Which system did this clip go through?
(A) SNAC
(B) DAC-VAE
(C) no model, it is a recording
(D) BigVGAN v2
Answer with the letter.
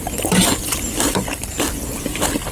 D